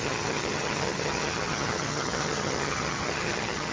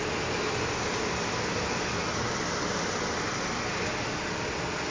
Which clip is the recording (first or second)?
second